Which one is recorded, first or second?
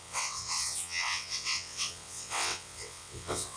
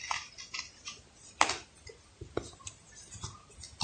second